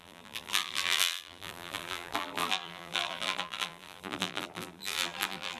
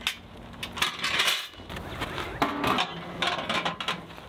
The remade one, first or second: first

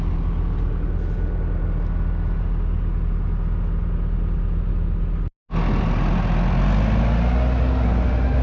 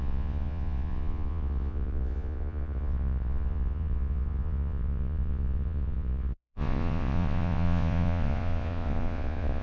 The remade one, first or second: second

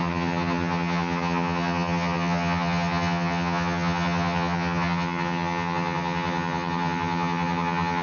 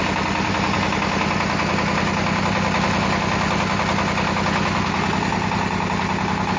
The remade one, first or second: first